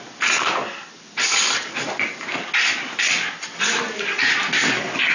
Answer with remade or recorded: recorded